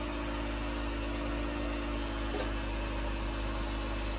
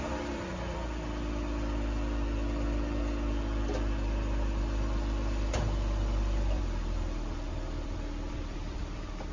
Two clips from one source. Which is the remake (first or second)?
second